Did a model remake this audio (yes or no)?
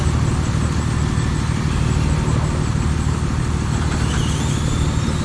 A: no